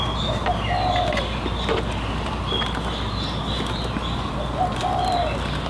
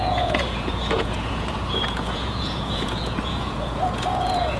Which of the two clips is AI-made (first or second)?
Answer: second